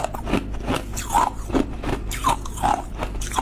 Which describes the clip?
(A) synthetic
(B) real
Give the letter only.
B